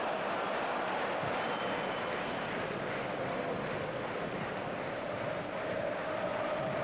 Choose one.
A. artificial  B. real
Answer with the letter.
B